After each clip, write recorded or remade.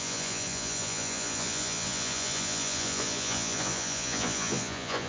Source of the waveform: remade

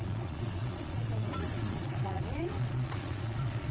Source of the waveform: remade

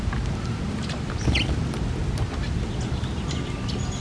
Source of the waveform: recorded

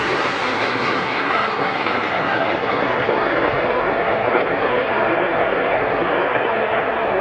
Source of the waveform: remade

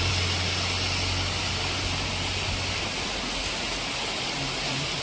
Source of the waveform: recorded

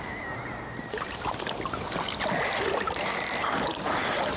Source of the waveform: recorded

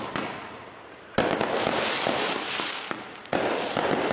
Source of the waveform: remade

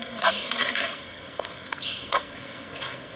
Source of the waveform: remade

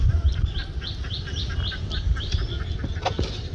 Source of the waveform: recorded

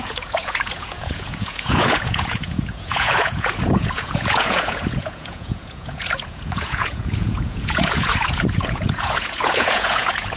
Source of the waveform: remade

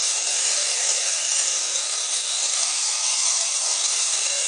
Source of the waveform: remade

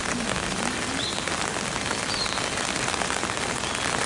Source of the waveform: recorded